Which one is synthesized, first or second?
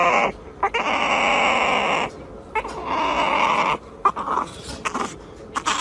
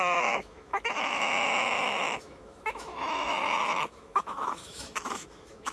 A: second